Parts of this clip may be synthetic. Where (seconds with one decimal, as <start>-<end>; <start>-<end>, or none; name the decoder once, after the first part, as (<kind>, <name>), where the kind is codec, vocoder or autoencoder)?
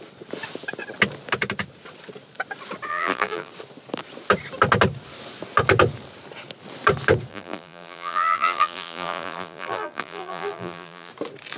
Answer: 2.9-3.5 (vocoder, BigVGAN v2); 7.3-11.1